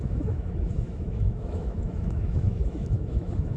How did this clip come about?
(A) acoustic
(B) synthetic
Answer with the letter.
B